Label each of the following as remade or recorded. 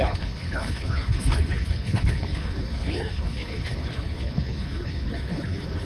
remade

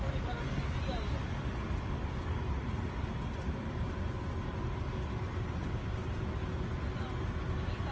recorded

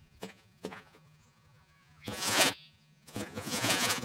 remade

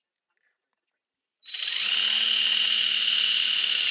recorded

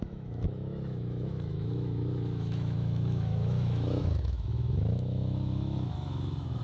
remade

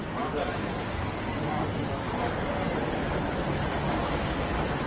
recorded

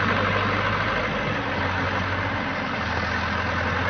recorded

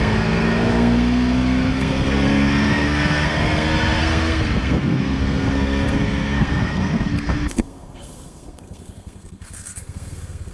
remade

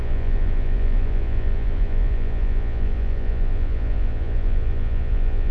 remade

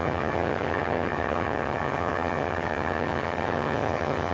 remade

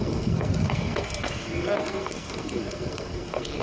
remade